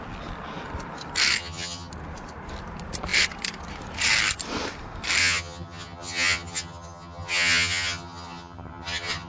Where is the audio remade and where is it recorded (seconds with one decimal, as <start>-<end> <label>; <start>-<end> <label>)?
0.0-1.4 recorded; 1.4-1.9 remade; 1.9-5.2 recorded; 5.2-9.3 remade